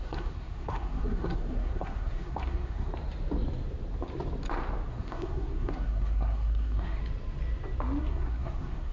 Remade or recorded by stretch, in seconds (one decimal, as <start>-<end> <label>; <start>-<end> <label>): 0.0-2.9 remade; 2.9-4.9 recorded; 4.9-7.0 remade; 7.0-8.0 recorded; 8.0-8.9 remade